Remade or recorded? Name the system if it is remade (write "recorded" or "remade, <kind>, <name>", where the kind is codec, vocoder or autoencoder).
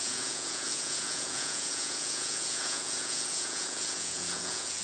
remade, vocoder, Vocos